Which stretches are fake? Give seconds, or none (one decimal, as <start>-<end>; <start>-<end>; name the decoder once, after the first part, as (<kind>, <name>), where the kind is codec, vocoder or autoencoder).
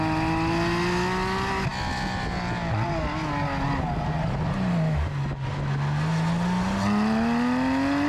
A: none